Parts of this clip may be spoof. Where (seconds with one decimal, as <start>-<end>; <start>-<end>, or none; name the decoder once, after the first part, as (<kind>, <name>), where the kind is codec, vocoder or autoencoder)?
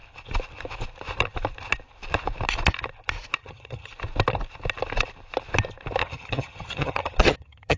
3.4-3.9 (vocoder, HiFi-GAN); 6.0-7.8